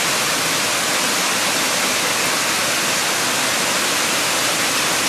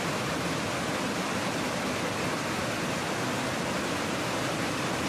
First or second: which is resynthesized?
second